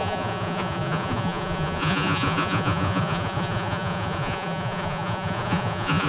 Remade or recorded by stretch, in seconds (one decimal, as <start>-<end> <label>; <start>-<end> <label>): 0.0-6.1 remade